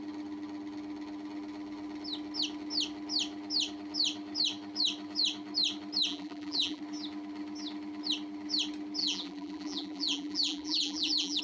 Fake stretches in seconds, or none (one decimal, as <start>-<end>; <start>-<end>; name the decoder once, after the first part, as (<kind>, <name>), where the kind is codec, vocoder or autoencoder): 6.1-6.8 (vocoder, BigVGAN v2); 9.0-11.4